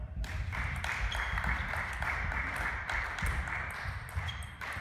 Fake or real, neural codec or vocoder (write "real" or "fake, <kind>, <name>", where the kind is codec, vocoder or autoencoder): fake, vocoder, BigVGAN v2